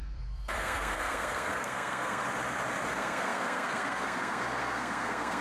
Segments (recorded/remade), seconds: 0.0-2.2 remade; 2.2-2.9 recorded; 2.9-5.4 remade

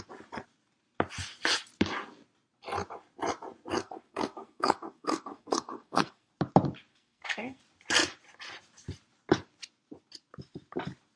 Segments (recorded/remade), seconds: 0.0-3.7 recorded; 3.7-6.3 remade; 6.3-6.9 recorded; 6.9-7.6 remade; 7.6-11.2 recorded

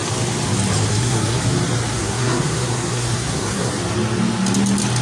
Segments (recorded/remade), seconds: 0.0-0.9 recorded; 0.9-1.4 remade; 1.4-1.9 recorded; 1.9-3.7 remade; 3.7-5.0 recorded

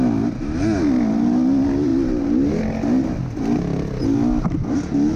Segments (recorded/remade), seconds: 0.0-5.2 recorded